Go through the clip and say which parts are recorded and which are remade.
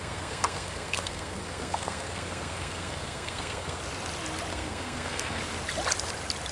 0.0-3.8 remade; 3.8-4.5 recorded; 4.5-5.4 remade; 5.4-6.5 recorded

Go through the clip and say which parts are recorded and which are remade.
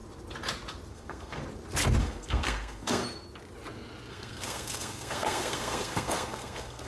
0.0-0.9 recorded; 0.9-1.4 remade; 1.4-2.0 recorded; 2.0-3.0 remade; 3.0-4.1 recorded; 4.1-6.9 remade